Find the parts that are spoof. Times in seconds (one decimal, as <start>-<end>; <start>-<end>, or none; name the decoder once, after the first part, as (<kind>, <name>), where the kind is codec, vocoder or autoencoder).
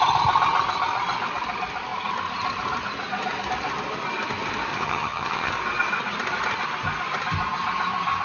4.7-5.5 (vocoder, HiFi-GAN)